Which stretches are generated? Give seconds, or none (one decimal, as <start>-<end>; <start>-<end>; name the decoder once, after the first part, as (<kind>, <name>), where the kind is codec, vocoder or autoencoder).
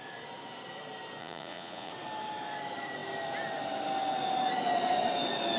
1.2-1.9 (vocoder, Vocos)